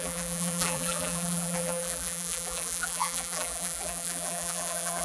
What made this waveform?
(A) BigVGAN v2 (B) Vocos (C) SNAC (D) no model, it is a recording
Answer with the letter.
A